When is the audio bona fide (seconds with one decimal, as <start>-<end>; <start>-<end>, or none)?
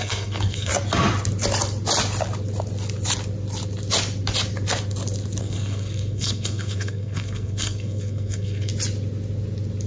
0.7-5.4; 8.7-9.9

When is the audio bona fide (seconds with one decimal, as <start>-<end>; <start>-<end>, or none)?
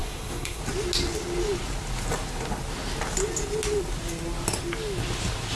0.6-5.6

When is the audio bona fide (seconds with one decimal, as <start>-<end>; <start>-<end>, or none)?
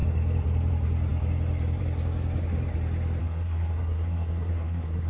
0.0-3.2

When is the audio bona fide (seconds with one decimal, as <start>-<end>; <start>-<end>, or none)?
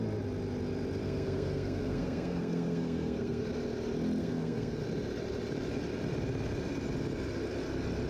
0.0-1.0; 3.4-4.2; 4.8-8.1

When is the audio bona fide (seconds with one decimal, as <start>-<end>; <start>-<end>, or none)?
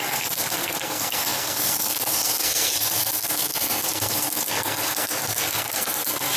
none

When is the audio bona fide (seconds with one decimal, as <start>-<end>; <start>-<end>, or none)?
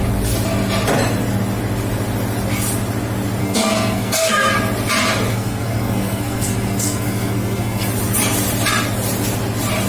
0.0-3.4; 4.5-5.3; 7.9-9.9